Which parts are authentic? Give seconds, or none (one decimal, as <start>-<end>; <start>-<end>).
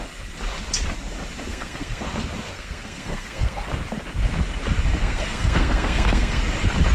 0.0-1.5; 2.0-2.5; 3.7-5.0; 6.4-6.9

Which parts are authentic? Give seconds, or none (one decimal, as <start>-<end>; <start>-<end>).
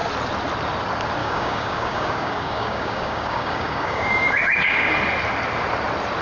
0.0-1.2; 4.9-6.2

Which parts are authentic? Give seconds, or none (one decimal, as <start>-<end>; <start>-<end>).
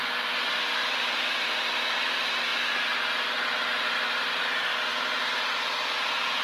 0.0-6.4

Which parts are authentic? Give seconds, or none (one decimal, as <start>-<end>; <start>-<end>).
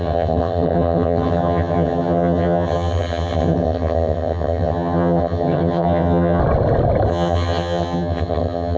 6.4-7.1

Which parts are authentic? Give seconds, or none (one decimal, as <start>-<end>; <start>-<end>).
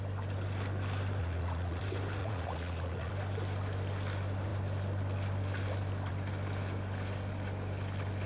0.0-1.2; 1.8-2.2; 3.1-8.3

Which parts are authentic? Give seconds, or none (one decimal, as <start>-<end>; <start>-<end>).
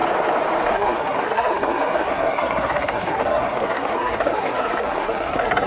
0.0-0.7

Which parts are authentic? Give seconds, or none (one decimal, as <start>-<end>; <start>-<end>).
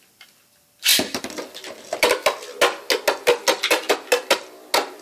0.0-5.0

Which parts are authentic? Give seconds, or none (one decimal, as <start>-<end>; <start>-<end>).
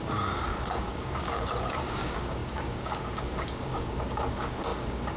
none